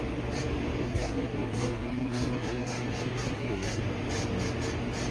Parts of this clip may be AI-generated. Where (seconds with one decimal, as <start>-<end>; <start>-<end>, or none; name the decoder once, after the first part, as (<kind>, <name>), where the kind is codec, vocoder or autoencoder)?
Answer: 0.8-3.8 (codec, SNAC)